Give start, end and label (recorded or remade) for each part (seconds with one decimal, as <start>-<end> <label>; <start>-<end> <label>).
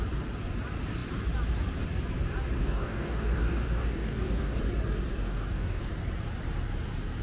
0.0-2.6 recorded; 2.6-4.6 remade; 4.6-5.1 recorded; 5.1-5.8 remade; 5.8-7.2 recorded